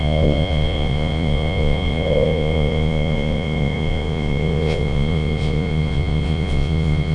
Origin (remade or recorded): remade